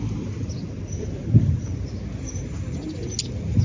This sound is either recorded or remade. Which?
recorded